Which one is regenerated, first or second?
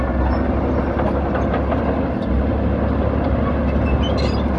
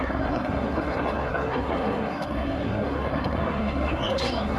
second